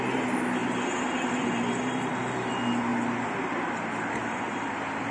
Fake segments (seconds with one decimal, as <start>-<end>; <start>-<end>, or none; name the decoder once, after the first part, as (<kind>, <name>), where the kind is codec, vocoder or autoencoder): none